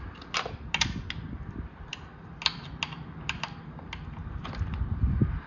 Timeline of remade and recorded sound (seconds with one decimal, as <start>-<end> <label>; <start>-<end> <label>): 0.0-5.5 recorded